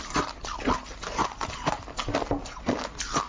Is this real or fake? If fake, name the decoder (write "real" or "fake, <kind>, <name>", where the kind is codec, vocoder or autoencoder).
real